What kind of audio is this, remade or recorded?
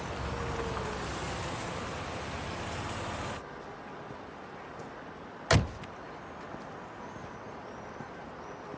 recorded